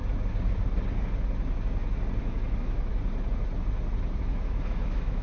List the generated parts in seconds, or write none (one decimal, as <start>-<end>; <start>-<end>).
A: 2.2-2.9; 4.2-5.2